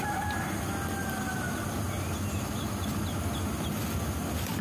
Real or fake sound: real